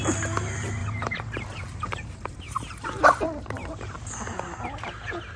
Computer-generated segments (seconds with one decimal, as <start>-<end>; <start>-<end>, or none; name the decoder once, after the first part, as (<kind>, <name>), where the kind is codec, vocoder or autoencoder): 0.8-4.0 (vocoder, BigVGAN v2)